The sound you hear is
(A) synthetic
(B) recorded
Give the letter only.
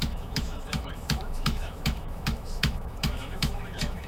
A